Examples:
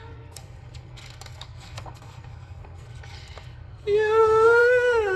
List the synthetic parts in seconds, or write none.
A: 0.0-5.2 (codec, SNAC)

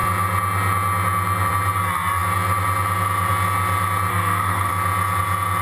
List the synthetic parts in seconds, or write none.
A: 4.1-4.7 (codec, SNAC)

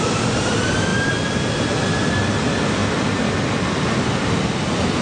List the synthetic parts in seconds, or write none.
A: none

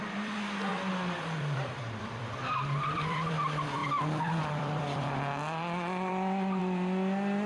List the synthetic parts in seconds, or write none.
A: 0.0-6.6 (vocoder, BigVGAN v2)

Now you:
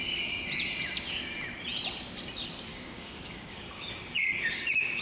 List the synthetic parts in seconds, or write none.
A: 2.7-5.0 (codec, DAC)